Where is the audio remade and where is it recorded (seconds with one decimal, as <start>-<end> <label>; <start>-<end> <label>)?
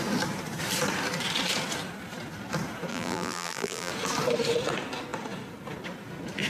0.0-2.9 recorded; 2.9-3.9 remade; 3.9-6.5 recorded